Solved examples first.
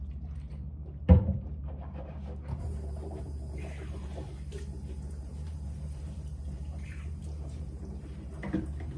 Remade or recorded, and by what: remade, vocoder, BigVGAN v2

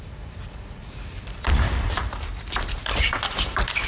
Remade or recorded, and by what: remade, vocoder, BigVGAN v2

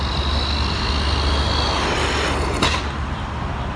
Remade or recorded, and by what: recorded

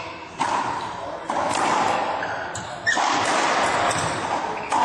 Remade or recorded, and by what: recorded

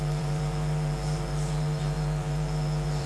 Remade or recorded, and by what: remade, vocoder, BigVGAN v2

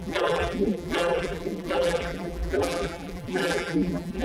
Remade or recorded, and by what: remade, vocoder, BigVGAN v2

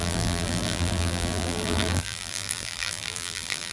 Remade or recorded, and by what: remade, vocoder, BigVGAN v2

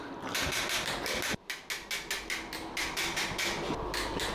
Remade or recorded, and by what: recorded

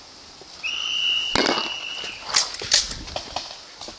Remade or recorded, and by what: recorded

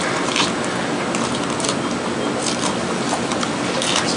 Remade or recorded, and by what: recorded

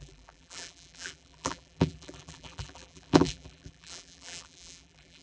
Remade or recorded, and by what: remade, vocoder, BigVGAN v2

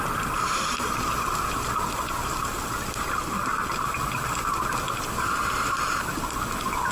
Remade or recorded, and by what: recorded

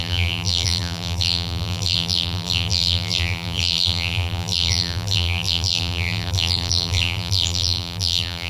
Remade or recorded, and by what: remade, vocoder, BigVGAN v2